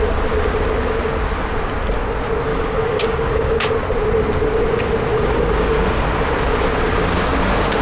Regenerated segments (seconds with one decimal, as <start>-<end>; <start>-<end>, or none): 2.5-3.7; 5.1-6.0